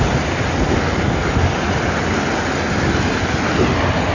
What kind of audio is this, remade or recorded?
recorded